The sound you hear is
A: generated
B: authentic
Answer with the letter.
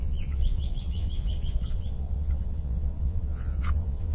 A